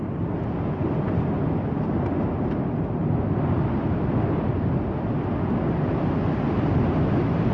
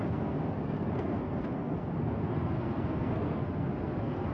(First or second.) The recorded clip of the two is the first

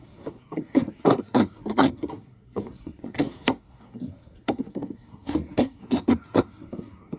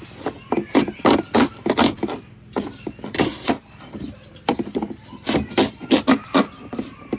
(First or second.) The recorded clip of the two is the second